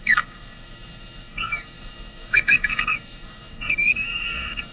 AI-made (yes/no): yes